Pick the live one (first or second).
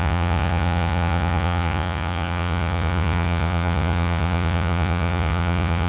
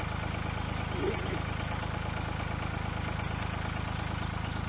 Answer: second